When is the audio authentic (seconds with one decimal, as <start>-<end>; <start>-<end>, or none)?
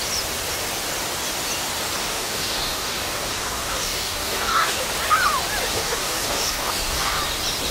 0.0-2.0; 4.8-5.7; 7.2-7.7